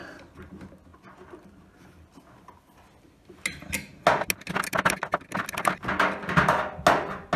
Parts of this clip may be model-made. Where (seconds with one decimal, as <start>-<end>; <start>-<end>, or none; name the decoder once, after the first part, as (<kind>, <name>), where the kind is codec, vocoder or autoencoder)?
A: none